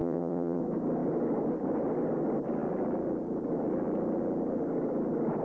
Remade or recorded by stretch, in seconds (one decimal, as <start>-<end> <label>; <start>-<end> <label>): 0.0-0.6 remade; 0.6-5.4 recorded